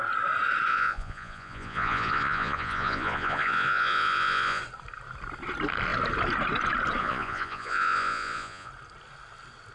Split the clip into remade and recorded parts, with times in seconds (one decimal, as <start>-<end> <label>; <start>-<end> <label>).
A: 0.0-0.7 recorded; 0.7-4.6 remade; 4.6-7.0 recorded; 7.0-8.7 remade; 8.7-9.7 recorded